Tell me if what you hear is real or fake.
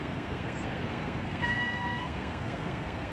fake